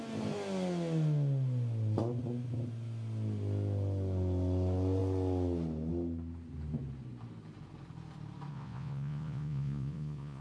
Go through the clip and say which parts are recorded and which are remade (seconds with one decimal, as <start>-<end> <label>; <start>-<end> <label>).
0.0-8.5 recorded; 8.5-10.4 remade